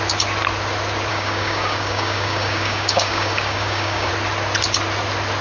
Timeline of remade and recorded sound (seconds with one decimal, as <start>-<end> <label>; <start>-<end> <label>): 0.0-1.1 recorded; 1.1-4.1 remade; 4.1-5.4 recorded

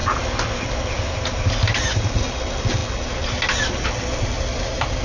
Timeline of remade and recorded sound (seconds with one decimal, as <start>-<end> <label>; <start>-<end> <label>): 0.0-5.0 recorded

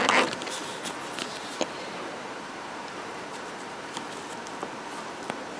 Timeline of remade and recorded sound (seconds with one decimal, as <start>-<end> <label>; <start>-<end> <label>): 0.0-0.7 recorded; 0.7-4.1 remade; 4.1-5.6 recorded

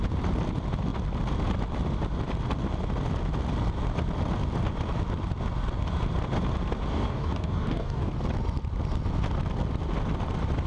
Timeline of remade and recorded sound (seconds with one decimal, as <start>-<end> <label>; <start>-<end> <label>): 0.0-6.9 recorded; 6.9-8.1 remade; 8.1-10.7 recorded

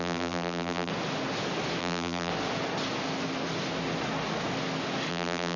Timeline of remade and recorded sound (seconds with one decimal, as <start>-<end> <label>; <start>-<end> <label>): 0.0-0.9 remade; 0.9-1.8 recorded; 1.8-2.3 remade; 2.3-5.1 recorded; 5.1-5.6 remade

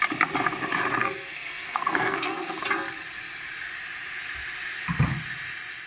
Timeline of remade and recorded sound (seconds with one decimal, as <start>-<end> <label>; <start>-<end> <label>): 0.0-1.0 recorded; 1.0-2.6 remade; 2.6-5.9 recorded